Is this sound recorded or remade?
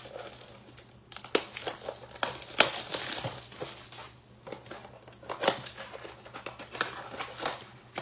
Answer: recorded